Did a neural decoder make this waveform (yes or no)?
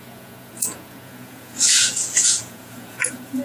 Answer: yes